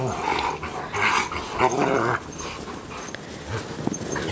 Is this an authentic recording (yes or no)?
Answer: yes